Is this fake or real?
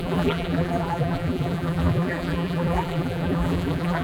fake